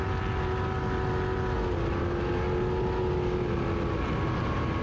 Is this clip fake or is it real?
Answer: real